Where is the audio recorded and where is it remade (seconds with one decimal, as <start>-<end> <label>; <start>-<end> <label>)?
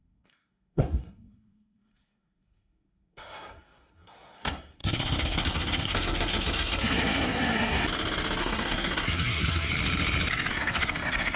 0.0-7.8 remade; 7.8-8.4 recorded; 8.4-9.7 remade; 9.7-10.5 recorded; 10.5-11.4 remade